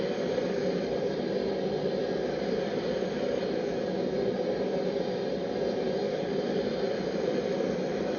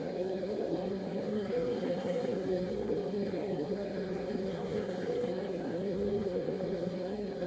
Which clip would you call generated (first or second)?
second